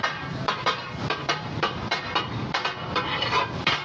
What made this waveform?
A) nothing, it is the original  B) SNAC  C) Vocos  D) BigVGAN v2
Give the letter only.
D